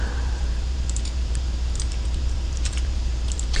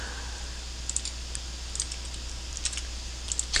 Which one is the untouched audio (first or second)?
second